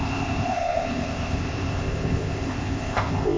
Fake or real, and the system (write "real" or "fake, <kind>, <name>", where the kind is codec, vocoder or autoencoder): fake, codec, ZipCodec